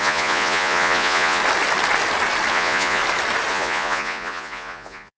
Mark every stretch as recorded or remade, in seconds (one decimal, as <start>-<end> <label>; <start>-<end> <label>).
0.0-1.4 remade; 1.4-2.5 recorded; 2.5-3.0 remade; 3.0-3.5 recorded; 3.5-5.2 remade